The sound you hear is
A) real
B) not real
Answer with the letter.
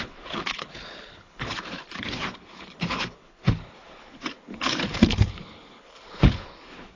B